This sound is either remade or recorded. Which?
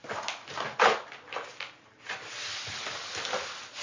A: recorded